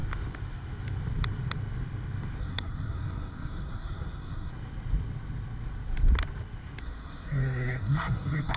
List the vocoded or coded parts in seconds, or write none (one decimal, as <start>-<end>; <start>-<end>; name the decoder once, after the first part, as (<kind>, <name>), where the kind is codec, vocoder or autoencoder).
2.4-4.5 (codec, SNAC); 6.8-8.6

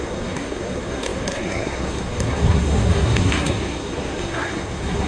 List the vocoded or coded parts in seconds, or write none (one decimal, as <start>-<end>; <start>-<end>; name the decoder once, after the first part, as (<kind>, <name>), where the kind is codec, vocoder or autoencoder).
0.0-5.1 (codec, SNAC)

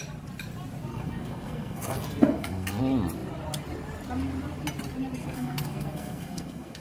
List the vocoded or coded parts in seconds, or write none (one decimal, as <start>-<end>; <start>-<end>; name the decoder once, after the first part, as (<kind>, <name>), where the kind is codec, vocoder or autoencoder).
0.9-2.8 (codec, SNAC); 5.2-6.8

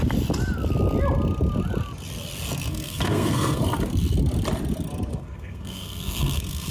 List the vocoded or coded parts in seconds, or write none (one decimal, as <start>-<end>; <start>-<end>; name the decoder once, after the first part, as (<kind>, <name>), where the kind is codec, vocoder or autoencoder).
2.7-3.6 (codec, SNAC); 5.1-6.7